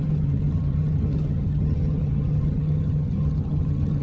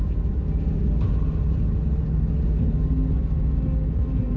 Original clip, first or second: second